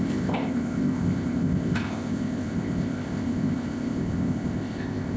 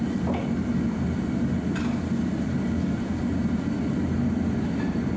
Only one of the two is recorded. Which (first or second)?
second